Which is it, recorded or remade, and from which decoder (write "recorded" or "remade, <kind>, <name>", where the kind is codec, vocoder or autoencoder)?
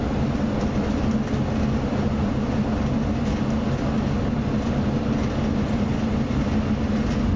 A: recorded